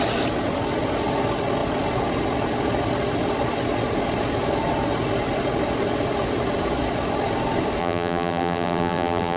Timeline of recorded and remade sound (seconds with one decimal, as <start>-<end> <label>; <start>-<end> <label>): 0.0-7.8 recorded; 7.8-9.4 remade